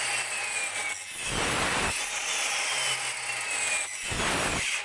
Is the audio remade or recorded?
recorded